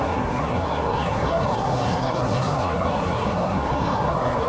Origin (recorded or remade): remade